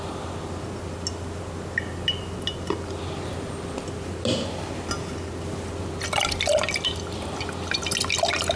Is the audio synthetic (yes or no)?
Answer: no